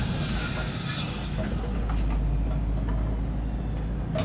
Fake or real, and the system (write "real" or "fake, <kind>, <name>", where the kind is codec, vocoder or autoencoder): real